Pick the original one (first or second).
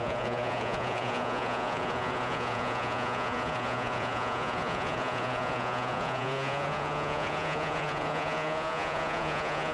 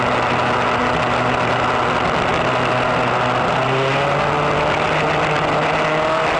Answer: second